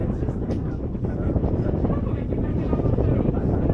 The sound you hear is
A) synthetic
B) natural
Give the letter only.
B